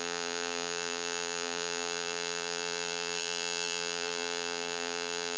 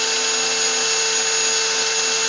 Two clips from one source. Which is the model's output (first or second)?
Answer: first